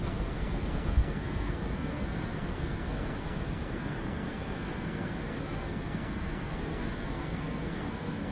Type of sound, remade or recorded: remade